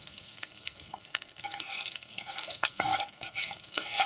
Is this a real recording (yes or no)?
no